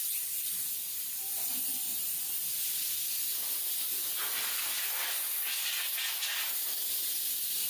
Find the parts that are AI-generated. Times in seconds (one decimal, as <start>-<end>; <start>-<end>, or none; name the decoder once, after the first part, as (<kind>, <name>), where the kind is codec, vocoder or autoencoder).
0.0-1.9 (vocoder, BigVGAN v2); 3.9-5.9; 6.9-7.7